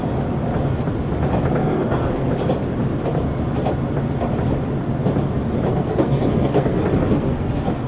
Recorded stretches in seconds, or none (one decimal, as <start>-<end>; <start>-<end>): 0.0-1.6; 2.3-5.7